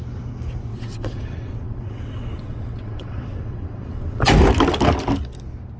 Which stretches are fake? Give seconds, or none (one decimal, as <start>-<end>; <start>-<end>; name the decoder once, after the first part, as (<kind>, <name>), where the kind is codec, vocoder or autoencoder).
0.7-4.2 (vocoder, WaveNeXt)